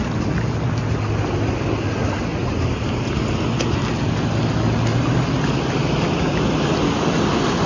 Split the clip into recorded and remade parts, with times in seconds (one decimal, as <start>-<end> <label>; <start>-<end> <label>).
0.0-2.3 recorded; 2.3-3.0 remade; 3.0-7.7 recorded